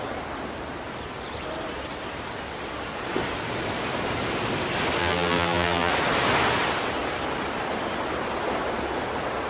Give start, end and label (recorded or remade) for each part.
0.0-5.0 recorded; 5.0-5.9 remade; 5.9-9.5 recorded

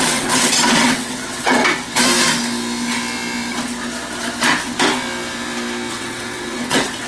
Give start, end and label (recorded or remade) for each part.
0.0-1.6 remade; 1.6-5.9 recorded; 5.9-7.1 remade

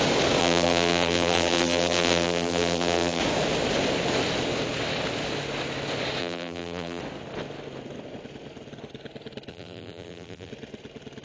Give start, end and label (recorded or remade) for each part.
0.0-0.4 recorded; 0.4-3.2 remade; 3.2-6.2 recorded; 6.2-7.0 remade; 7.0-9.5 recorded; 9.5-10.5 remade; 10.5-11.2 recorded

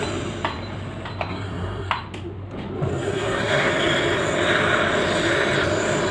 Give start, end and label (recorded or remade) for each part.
0.0-1.3 recorded; 1.3-1.9 remade; 1.9-2.9 recorded; 2.9-3.7 remade; 3.7-6.1 recorded

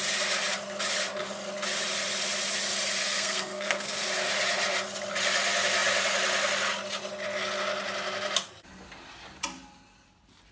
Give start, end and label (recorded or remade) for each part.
0.0-3.0 recorded; 3.0-4.0 remade; 4.0-10.5 recorded